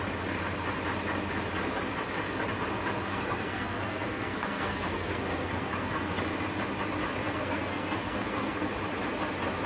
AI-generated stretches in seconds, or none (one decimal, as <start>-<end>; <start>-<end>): 3.1-6.1; 7.2-8.7